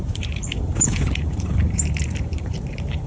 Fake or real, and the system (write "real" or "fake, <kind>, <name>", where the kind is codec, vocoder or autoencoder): fake, vocoder, BigVGAN v2